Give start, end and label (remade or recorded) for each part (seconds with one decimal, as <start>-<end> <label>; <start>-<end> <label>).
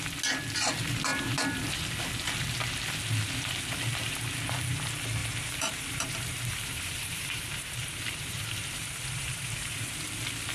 0.0-5.2 recorded; 5.2-9.9 remade; 9.9-10.5 recorded